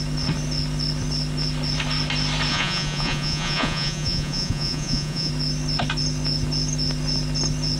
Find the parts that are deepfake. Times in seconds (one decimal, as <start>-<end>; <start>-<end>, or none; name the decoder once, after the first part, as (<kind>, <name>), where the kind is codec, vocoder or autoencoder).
2.5-5.3 (vocoder, Vocos)